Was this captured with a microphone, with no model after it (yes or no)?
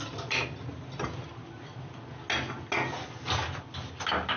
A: yes